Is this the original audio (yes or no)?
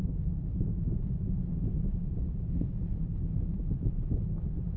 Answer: no